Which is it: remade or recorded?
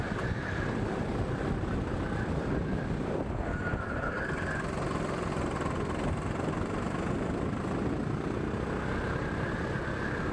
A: recorded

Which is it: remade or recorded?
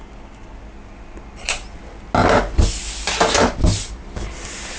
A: recorded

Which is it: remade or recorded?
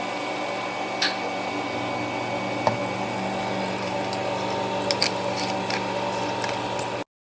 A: recorded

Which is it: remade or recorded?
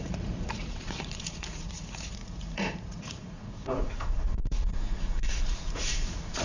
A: remade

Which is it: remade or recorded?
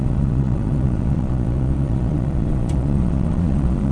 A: remade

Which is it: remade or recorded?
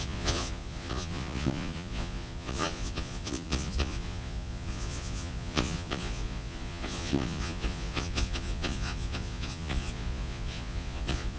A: remade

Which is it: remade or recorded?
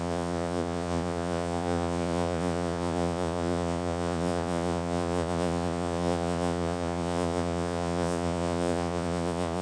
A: remade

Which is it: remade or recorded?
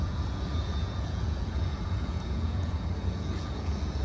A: remade